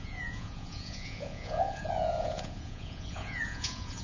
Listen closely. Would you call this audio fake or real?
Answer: fake